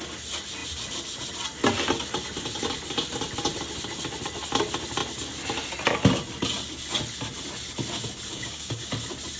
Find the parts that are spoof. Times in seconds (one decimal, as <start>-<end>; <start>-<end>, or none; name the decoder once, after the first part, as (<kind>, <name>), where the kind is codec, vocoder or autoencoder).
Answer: 8.3-8.9 (codec, DAC)